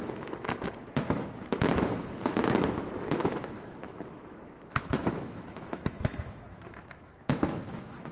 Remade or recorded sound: remade